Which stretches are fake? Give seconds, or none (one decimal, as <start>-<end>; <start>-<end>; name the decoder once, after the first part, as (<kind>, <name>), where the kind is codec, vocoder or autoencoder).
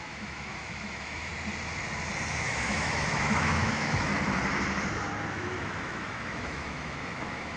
0.0-1.3 (autoencoder, DAC-VAE); 2.3-4.1; 5.3-7.6